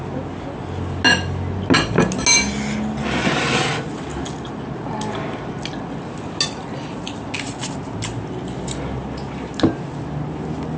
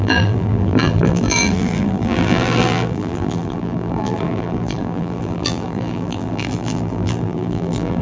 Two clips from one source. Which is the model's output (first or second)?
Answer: second